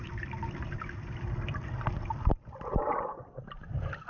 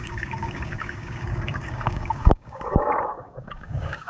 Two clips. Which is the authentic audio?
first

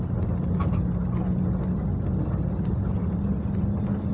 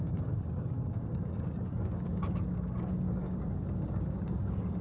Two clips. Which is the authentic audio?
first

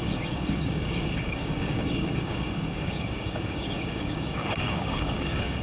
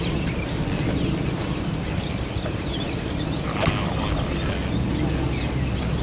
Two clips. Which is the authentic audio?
second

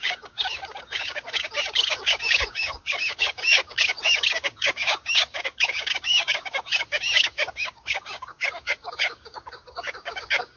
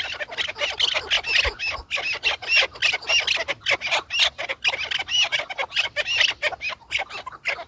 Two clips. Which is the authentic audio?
second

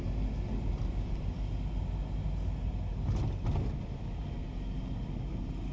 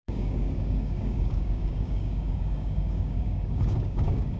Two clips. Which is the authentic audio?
first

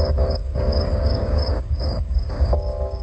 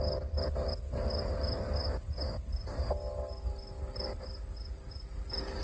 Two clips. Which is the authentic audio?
second